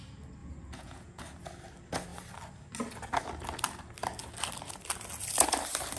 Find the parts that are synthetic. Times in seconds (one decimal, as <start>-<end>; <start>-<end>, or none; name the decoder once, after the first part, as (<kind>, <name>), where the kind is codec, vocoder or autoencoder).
0.4-1.2 (vocoder, Vocos)